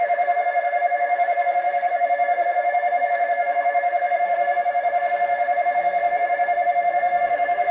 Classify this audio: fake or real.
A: fake